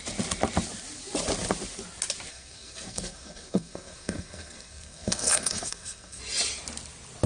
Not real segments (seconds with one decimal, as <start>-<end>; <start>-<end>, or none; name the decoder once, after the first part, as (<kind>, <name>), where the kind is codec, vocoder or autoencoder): 2.3-6.2 (codec, SNAC)